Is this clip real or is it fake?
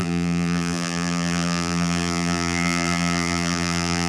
fake